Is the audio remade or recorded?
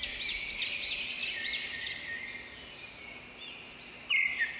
recorded